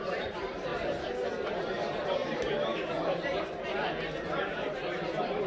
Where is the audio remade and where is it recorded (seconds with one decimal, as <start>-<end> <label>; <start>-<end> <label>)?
0.0-0.7 remade; 0.7-1.5 recorded; 1.5-5.5 remade